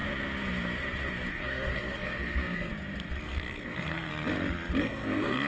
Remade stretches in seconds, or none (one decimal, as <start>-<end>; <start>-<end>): 1.3-2.7; 3.2-4.1; 4.8-5.5